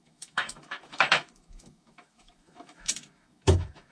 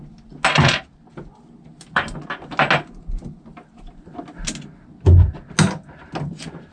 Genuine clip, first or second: second